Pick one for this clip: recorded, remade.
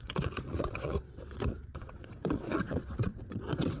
remade